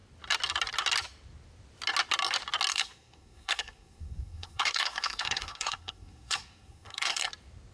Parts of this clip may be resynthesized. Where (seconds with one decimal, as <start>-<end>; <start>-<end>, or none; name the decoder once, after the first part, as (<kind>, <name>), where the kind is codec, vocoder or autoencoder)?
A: 2.7-7.3 (codec, SNAC)